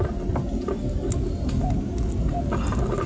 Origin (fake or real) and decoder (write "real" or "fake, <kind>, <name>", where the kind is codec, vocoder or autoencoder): real